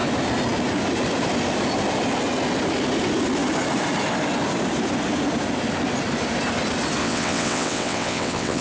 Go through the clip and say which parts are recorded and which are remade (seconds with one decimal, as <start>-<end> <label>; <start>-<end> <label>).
0.0-7.0 recorded; 7.0-8.6 remade